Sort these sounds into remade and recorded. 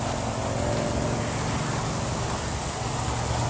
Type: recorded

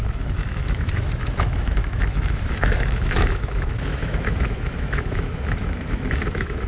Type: remade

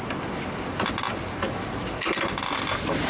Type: recorded